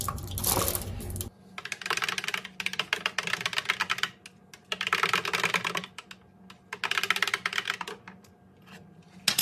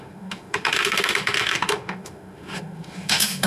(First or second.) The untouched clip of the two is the first